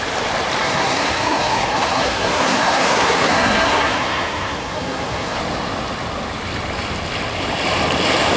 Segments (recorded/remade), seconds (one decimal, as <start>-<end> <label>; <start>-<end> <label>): 0.0-0.6 recorded; 0.6-5.4 remade; 5.4-8.4 recorded